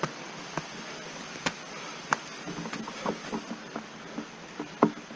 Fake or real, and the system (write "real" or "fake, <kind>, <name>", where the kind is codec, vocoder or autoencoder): real